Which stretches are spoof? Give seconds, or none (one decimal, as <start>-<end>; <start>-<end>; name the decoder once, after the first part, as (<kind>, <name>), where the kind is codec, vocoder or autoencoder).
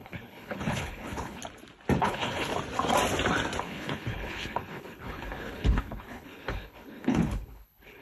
0.0-1.4 (codec, HILCodec); 2.0-2.5; 3.6-8.0